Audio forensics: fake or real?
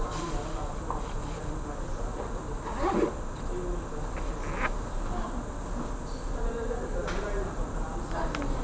real